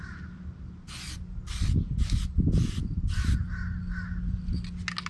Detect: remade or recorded recorded